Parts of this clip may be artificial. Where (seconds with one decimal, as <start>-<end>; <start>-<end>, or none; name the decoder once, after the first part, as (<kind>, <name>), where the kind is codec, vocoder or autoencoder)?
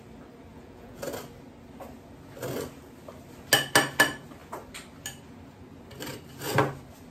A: 0.5-1.0 (vocoder, Vocos)